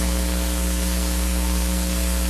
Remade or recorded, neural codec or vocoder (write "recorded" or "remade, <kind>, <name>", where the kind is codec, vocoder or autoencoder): remade, codec, SNAC